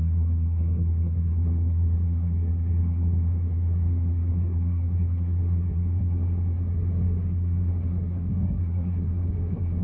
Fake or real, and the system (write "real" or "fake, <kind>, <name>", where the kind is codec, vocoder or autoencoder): fake, codec, SNAC